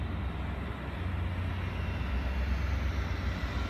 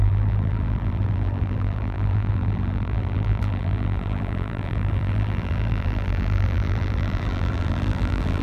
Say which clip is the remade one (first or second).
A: second